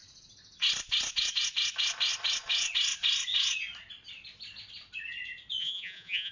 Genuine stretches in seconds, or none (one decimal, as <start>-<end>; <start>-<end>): 0.0-5.6

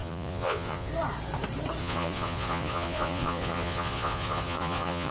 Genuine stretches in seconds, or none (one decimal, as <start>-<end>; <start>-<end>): 0.9-1.8

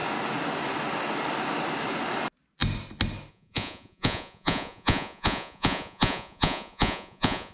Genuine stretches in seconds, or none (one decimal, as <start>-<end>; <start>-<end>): 0.0-3.3

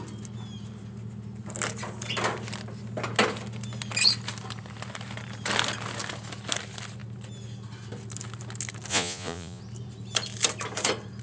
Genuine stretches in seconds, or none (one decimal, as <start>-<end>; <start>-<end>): 0.0-8.9; 9.6-11.2

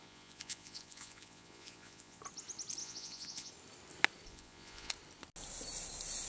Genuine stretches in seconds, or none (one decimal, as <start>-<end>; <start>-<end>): 2.2-2.8; 3.5-4.3; 4.9-6.3

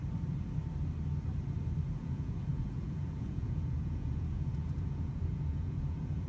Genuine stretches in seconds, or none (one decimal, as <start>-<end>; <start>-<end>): 0.0-2.0